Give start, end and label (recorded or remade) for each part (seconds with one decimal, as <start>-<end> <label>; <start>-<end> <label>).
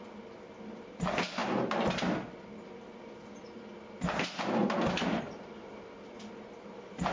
0.0-7.1 recorded